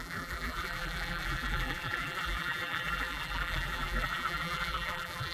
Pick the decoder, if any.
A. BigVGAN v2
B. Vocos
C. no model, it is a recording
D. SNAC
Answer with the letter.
A